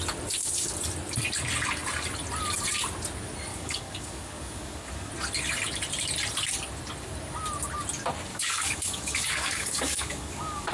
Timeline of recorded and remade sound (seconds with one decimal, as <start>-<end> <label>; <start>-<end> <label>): 0.0-3.5 recorded; 3.5-5.1 remade; 5.1-8.3 recorded; 8.3-10.7 remade